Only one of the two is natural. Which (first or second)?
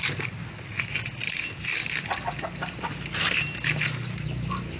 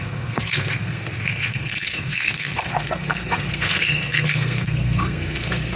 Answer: first